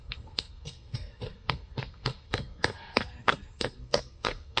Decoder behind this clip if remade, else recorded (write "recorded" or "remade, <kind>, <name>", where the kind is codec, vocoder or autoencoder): remade, codec, SNAC